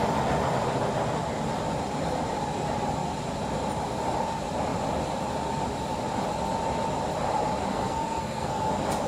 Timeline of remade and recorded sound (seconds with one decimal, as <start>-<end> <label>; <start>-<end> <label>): 0.0-7.7 recorded; 7.7-8.7 remade; 8.7-9.1 recorded